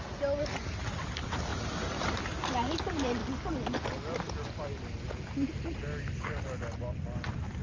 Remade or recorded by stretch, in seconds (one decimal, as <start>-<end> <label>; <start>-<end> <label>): 0.0-1.5 recorded; 1.5-2.2 remade; 2.2-7.6 recorded